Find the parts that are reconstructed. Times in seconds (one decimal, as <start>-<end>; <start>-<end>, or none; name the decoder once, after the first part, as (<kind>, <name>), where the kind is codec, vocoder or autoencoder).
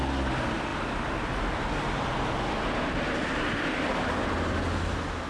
none